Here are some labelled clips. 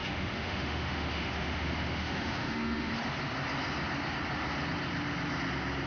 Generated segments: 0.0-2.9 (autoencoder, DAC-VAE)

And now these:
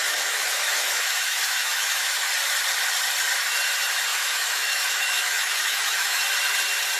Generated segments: 0.0-2.3 (autoencoder, DAC-VAE); 4.1-6.2

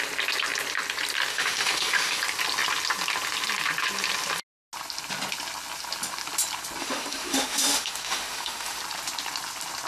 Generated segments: 1.3-2.2 (autoencoder, DAC-VAE); 6.8-8.8

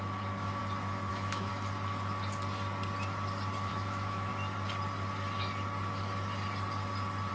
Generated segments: 0.0-0.6 (autoencoder, DAC-VAE); 1.1-1.5; 3.7-4.3

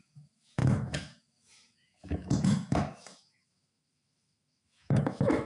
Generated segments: 0.0-5.5 (autoencoder, DAC-VAE)

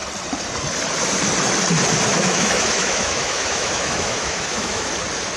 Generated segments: 2.1-4.9 (autoencoder, DAC-VAE)

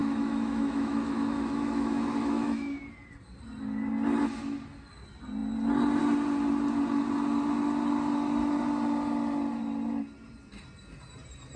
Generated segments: 0.0-2.8 (autoencoder, DAC-VAE)

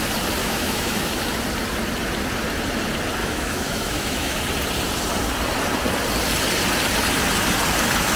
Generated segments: 0.4-1.2 (autoencoder, DAC-VAE); 3.2-4.4